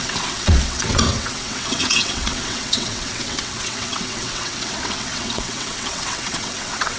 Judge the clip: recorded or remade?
remade